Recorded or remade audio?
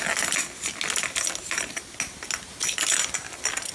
recorded